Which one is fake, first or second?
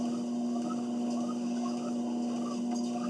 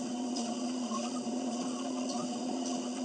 second